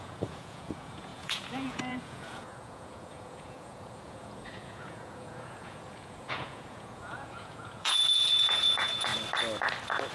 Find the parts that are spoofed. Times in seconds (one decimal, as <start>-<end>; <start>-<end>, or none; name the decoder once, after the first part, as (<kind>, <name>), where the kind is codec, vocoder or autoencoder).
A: 0.0-9.1 (vocoder, Vocos)